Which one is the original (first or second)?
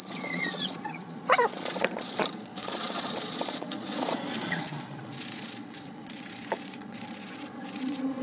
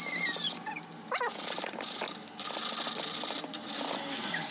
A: second